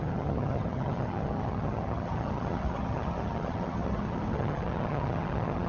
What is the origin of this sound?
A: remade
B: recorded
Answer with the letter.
A